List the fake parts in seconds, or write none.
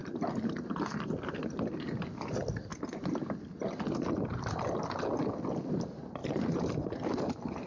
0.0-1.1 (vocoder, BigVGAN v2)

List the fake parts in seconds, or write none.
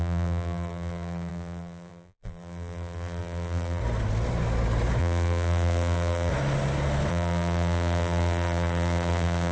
0.0-3.8 (vocoder, BigVGAN v2); 5.0-6.3; 7.1-9.5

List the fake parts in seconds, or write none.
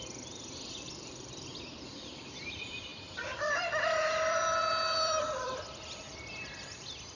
0.0-7.2 (vocoder, BigVGAN v2)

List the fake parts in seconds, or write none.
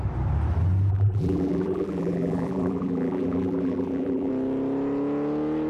0.9-4.3 (vocoder, BigVGAN v2)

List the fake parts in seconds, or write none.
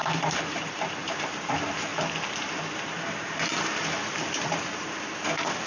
0.0-1.5 (vocoder, BigVGAN v2); 1.9-5.3